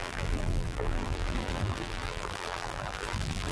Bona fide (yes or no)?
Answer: no